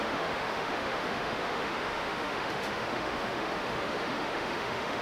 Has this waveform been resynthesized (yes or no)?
yes